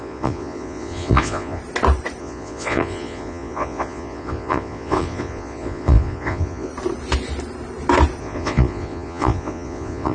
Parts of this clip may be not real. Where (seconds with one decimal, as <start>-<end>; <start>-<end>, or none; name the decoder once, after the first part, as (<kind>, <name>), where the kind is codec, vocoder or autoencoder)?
0.0-1.6 (vocoder, Vocos); 2.2-6.7; 8.2-10.1